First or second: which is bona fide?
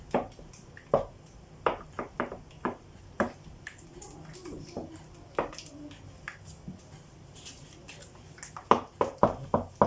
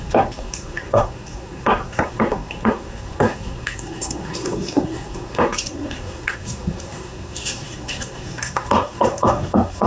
first